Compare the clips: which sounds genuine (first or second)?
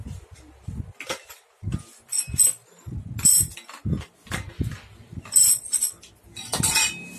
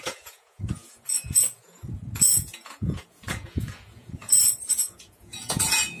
first